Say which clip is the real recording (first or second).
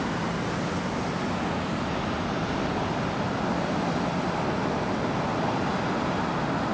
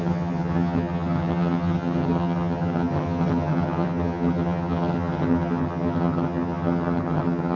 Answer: first